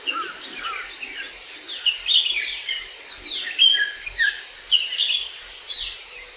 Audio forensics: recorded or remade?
recorded